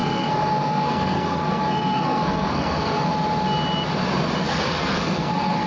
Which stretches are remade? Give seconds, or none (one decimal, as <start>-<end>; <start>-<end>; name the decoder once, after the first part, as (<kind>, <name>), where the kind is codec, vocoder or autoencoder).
0.0-3.1 (codec, SNAC); 4.4-5.7

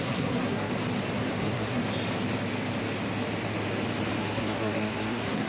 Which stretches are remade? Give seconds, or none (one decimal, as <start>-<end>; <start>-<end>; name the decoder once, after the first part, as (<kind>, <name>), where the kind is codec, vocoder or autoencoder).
0.0-0.7 (codec, SNAC); 1.4-1.8; 4.2-5.5

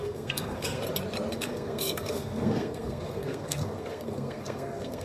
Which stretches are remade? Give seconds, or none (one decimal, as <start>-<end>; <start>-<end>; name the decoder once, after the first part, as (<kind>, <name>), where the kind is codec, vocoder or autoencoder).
0.0-0.8 (codec, SNAC); 1.3-5.0

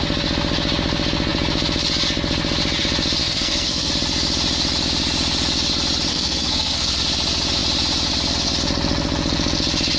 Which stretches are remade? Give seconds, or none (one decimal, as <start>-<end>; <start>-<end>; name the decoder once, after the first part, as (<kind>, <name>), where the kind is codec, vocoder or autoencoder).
3.2-3.9 (codec, SNAC); 6.1-7.0

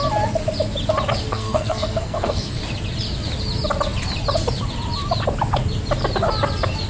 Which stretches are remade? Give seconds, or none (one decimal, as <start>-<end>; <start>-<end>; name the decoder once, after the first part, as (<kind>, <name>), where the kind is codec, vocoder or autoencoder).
1.3-2.6 (codec, SNAC)